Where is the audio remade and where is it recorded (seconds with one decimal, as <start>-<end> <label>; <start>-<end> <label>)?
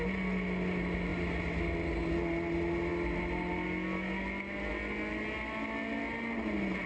0.0-6.9 recorded